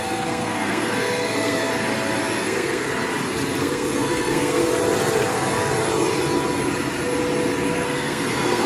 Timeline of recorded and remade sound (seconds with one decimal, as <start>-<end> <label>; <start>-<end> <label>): 0.0-1.7 remade; 1.7-2.4 recorded; 2.4-2.9 remade; 2.9-3.6 recorded; 3.6-4.6 remade; 4.6-5.3 recorded; 5.3-5.7 remade; 5.7-7.7 recorded; 7.7-8.7 remade

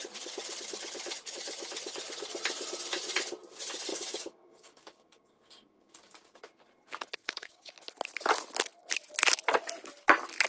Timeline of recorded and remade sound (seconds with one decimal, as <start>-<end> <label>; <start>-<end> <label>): 0.0-3.9 recorded; 3.9-6.4 remade; 6.4-7.2 recorded; 7.2-7.7 remade; 7.7-10.5 recorded

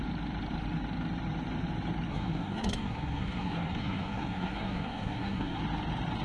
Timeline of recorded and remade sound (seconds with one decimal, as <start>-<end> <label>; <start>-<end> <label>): 0.0-2.1 recorded; 2.1-5.6 remade; 5.6-6.2 recorded

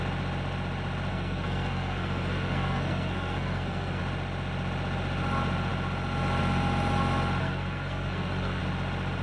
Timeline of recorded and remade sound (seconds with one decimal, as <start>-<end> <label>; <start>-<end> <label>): 0.0-1.1 recorded; 1.1-4.0 remade; 4.0-7.4 recorded; 7.4-8.6 remade; 8.6-9.2 recorded